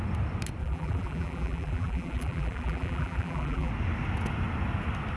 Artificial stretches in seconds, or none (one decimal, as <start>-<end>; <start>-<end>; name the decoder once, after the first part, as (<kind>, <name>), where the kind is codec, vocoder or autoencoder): 0.6-3.7 (vocoder, BigVGAN v2)

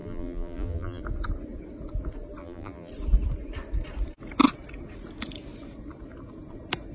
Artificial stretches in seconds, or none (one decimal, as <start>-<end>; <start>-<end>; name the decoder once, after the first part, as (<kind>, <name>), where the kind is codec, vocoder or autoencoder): 0.0-1.0 (vocoder, BigVGAN v2); 2.4-2.9

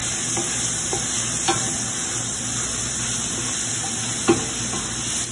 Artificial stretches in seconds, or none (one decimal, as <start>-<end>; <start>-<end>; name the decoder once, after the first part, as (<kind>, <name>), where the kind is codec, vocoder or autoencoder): 2.8-5.3 (vocoder, BigVGAN v2)

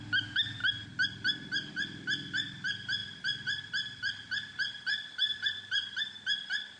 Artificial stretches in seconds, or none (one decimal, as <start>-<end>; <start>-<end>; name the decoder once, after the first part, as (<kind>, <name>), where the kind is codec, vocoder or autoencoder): 3.0-6.0 (vocoder, BigVGAN v2)

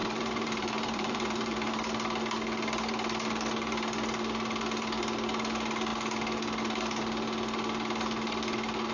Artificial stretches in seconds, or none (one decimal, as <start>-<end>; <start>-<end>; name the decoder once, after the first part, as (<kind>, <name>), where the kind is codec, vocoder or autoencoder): 0.0-1.7 (vocoder, BigVGAN v2)

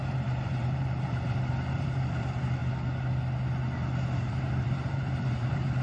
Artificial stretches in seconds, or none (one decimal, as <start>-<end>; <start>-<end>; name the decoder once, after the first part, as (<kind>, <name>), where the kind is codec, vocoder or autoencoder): 0.0-2.6 (vocoder, BigVGAN v2); 4.2-5.8